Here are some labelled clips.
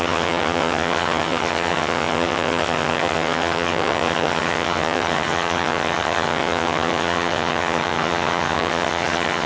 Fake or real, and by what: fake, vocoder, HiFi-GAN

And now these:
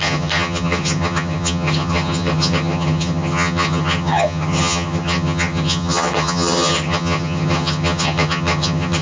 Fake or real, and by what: fake, vocoder, HiFi-GAN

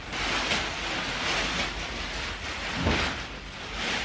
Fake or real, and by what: real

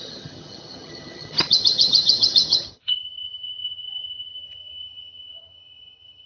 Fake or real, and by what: fake, vocoder, HiFi-GAN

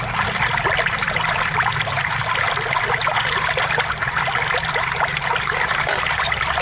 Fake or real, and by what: real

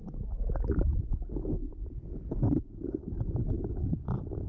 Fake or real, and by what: real